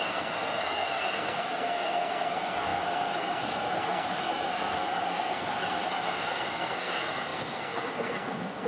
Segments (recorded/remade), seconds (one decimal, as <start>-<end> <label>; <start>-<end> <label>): 0.0-8.7 remade